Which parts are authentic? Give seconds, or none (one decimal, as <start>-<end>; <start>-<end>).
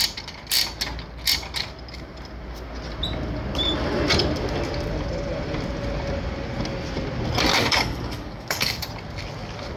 0.0-7.5; 8.8-9.8